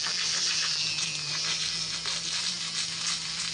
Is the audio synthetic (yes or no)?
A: no